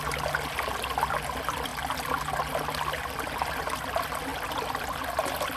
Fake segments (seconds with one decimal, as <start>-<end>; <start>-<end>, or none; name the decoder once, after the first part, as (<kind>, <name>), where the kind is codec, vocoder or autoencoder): none